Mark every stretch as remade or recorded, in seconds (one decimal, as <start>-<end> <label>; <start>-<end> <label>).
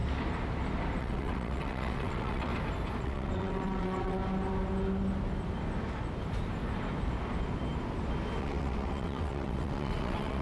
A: 0.0-1.0 recorded; 1.0-2.5 remade; 2.5-3.0 recorded; 3.0-4.2 remade; 4.2-8.4 recorded; 8.4-10.4 remade